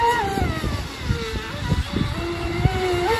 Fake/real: real